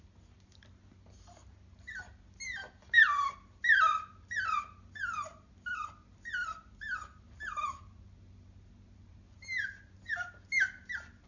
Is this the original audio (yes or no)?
yes